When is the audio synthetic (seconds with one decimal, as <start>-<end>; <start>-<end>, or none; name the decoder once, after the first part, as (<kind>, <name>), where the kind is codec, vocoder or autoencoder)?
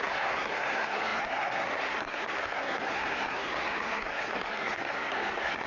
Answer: 0.0-5.7 (codec, SNAC)